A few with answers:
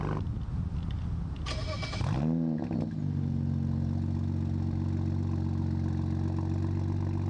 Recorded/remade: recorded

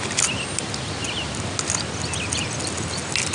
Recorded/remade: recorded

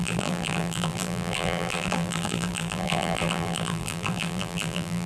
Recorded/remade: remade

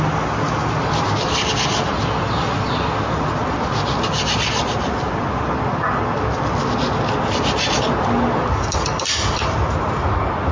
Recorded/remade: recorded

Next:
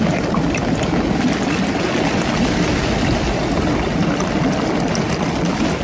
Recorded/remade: recorded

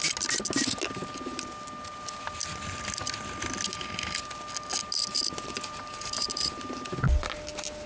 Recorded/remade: recorded